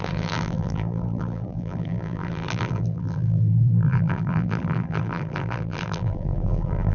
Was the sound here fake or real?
fake